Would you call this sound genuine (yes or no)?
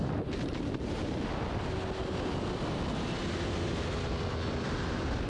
yes